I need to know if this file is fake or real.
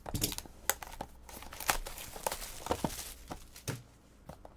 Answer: real